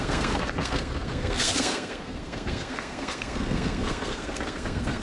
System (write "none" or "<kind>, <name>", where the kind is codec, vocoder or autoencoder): codec, SNAC